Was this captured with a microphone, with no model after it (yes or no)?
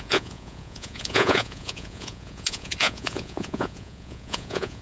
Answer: no